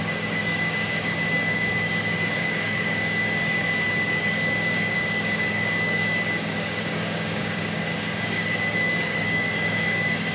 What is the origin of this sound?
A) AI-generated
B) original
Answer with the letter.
A